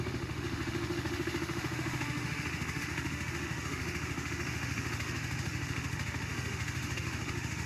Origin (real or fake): fake